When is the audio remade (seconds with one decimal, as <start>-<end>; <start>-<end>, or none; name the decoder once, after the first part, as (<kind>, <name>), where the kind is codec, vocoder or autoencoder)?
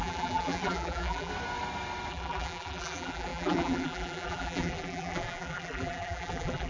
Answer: 0.0-1.3 (vocoder, BigVGAN v2); 2.1-6.7